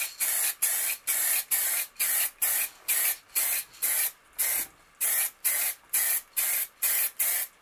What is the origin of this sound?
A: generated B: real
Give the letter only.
B